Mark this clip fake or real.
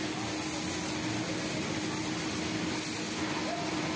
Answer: real